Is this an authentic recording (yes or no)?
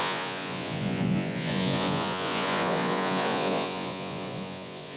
no